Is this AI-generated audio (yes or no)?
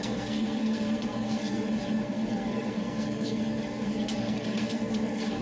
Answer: yes